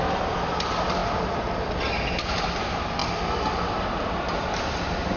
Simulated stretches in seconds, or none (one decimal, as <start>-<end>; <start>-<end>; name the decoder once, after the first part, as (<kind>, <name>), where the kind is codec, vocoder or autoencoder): 3.0-4.5 (vocoder, BigVGAN v2)